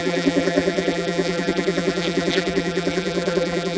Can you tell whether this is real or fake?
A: fake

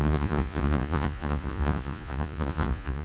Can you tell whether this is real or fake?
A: fake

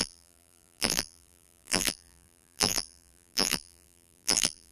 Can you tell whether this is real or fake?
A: fake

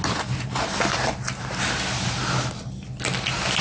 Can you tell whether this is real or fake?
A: real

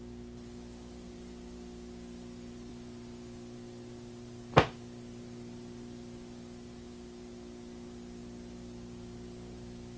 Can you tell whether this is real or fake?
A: real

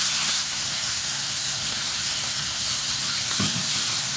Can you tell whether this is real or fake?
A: fake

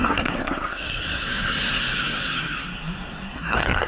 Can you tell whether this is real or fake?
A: fake